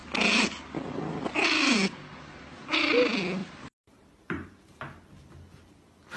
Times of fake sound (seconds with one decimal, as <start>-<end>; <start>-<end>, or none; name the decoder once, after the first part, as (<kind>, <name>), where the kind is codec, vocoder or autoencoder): 3.4-4.8 (vocoder, BigVGAN v2)